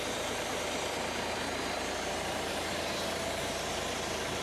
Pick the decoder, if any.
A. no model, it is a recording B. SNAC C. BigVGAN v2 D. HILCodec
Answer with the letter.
C